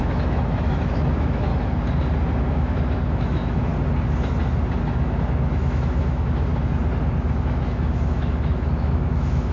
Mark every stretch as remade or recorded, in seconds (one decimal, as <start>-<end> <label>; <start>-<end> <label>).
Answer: 0.0-1.5 remade; 1.5-2.4 recorded; 2.4-3.7 remade; 3.7-4.8 recorded; 4.8-6.5 remade; 6.5-7.4 recorded; 7.4-9.5 remade